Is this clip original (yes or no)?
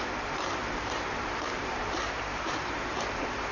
no